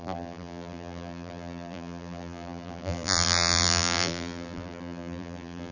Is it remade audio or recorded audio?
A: remade